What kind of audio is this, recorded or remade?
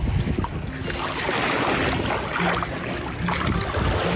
recorded